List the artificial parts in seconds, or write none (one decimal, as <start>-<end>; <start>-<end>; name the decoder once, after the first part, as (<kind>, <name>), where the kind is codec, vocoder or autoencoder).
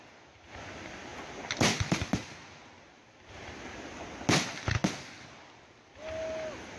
none